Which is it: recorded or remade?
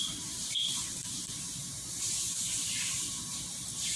remade